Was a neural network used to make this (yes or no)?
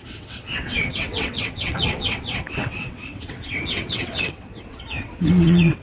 yes